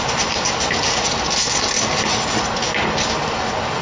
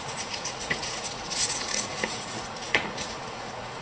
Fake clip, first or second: second